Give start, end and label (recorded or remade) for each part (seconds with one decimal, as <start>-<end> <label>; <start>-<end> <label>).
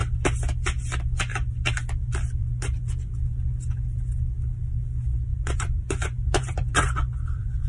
0.0-5.3 recorded; 5.3-7.7 remade